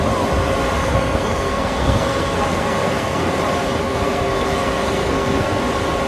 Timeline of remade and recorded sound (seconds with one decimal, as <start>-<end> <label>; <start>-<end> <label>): 0.0-0.8 recorded; 0.8-3.4 remade; 3.4-3.8 recorded; 3.8-5.6 remade; 5.6-6.1 recorded